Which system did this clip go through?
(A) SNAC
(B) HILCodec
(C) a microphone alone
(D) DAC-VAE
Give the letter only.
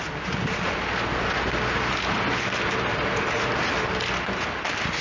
C